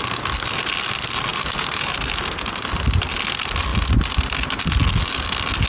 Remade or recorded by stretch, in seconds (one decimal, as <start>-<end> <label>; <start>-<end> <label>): 0.0-1.3 recorded; 1.3-1.9 remade; 1.9-5.7 recorded